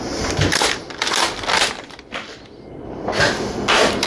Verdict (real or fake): real